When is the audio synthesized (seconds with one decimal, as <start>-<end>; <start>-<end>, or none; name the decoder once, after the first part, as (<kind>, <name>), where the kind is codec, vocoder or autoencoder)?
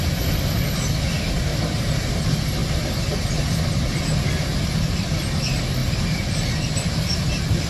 none